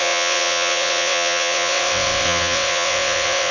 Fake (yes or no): yes